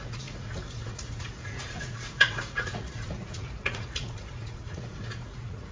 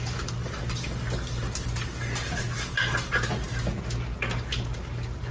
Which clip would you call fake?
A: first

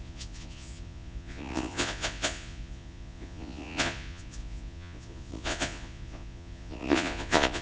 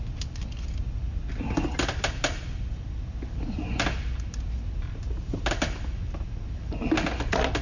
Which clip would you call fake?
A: first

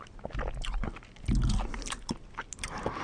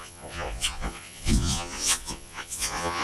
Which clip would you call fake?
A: second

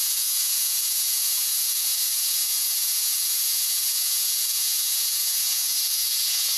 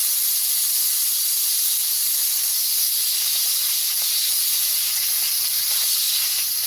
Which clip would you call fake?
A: first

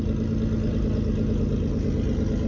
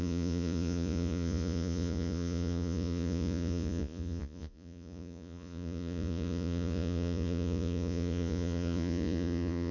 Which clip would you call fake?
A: second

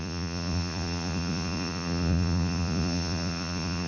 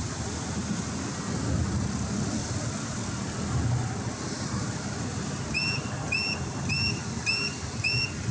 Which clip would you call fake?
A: first